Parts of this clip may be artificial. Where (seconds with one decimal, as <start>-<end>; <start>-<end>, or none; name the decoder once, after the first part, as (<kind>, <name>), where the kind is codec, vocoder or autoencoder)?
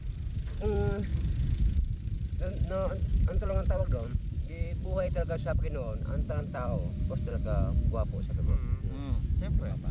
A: 0.0-1.1 (vocoder, BigVGAN v2); 1.9-7.3